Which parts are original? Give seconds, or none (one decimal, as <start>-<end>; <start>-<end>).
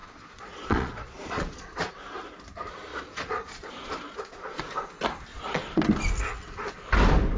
1.9-2.9; 4.6-5.3; 5.8-7.4